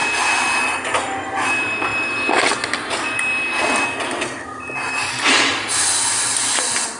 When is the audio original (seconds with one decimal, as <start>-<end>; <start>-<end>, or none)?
0.0-7.0